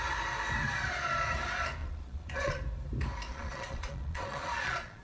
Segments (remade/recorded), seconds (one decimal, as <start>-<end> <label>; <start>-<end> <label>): 0.0-1.8 recorded; 1.8-2.6 remade; 2.6-3.3 recorded; 3.3-5.0 remade